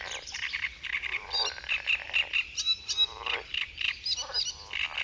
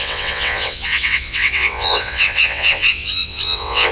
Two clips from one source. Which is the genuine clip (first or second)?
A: first